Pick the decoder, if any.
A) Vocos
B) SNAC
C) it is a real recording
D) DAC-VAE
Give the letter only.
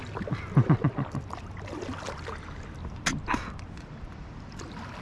C